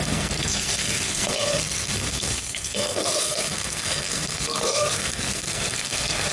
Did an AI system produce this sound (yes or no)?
yes